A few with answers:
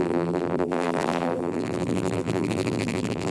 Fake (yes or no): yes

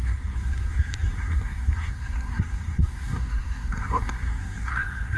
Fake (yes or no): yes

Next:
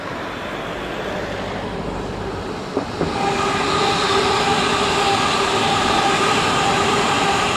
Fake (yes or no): no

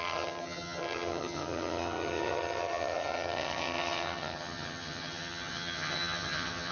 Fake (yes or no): yes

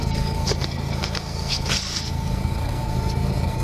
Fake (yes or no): yes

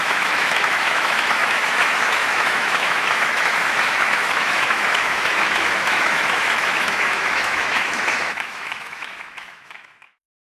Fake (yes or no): yes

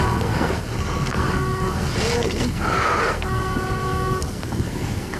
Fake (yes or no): yes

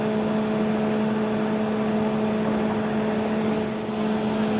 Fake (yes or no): no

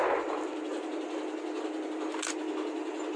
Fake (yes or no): no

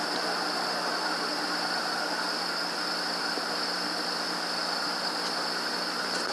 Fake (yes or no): no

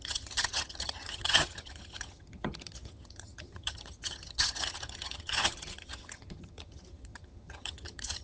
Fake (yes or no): yes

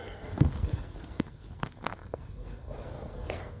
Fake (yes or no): yes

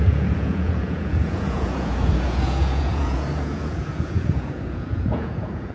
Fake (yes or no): yes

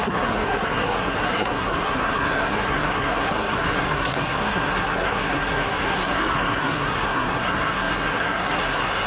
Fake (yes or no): yes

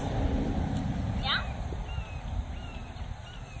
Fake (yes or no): no